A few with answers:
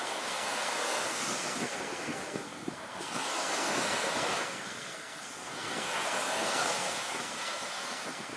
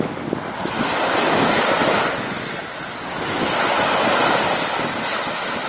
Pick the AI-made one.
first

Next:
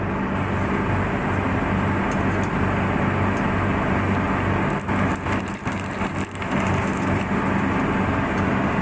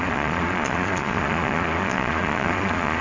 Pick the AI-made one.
second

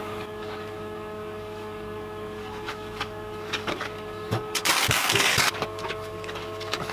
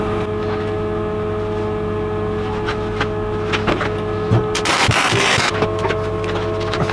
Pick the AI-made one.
first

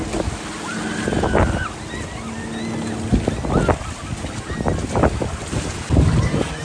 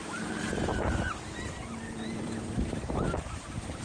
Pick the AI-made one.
second